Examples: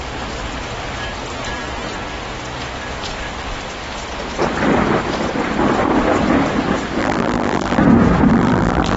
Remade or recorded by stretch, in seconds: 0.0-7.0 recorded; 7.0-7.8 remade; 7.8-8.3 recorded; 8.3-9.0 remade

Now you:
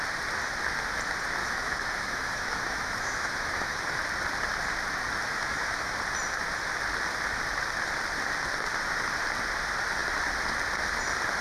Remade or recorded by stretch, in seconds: 0.0-1.4 recorded; 1.4-4.0 remade; 4.0-5.2 recorded; 5.2-5.9 remade; 5.9-11.4 recorded